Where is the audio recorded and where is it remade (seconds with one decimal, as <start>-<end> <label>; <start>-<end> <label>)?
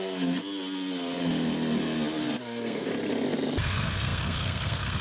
0.0-0.4 remade; 0.4-2.4 recorded; 2.4-2.9 remade; 2.9-3.6 recorded; 3.6-5.0 remade